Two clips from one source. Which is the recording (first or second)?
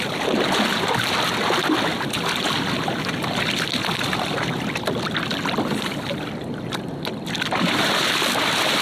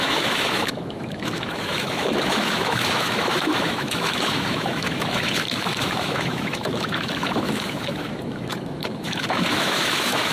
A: first